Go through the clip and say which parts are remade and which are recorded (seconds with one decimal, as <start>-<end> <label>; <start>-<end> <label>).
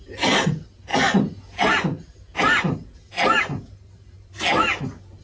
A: 0.0-5.2 recorded